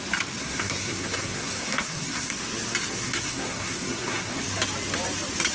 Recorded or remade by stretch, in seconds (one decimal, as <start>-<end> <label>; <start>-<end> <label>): 0.0-0.4 recorded; 0.4-2.4 remade; 2.4-2.9 recorded; 2.9-4.4 remade; 4.4-5.5 recorded

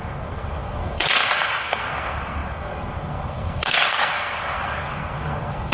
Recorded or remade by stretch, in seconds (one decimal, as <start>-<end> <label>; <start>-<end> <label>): 0.0-5.7 remade

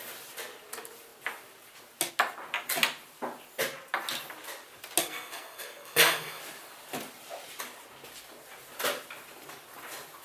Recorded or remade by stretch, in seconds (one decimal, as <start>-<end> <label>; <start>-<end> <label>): 0.0-5.0 recorded; 5.0-6.4 remade; 6.4-10.2 recorded

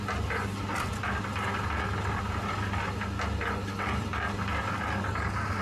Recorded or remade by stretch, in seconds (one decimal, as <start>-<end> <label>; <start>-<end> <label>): 0.0-5.6 recorded

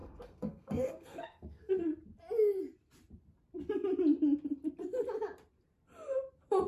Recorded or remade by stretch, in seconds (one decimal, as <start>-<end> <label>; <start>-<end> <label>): 0.0-1.7 remade; 1.7-6.7 recorded

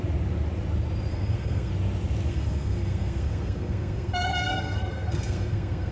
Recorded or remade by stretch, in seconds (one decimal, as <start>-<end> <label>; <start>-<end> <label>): 0.0-1.1 recorded; 1.1-1.7 remade; 1.7-2.3 recorded; 2.3-5.9 remade

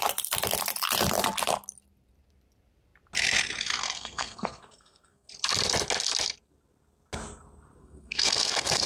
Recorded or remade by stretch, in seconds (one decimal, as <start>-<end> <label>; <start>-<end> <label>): 0.0-3.8 recorded; 3.8-5.3 remade; 5.3-7.8 recorded; 7.8-8.9 remade